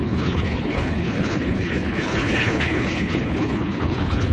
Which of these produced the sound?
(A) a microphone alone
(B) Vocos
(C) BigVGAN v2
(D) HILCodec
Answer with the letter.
D